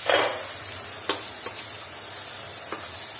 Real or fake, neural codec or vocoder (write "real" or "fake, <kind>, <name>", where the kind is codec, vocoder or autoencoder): real